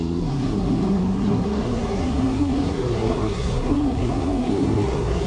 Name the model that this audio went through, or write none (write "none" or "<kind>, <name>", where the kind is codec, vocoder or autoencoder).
codec, SNAC